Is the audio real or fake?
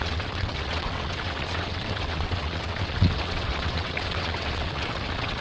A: fake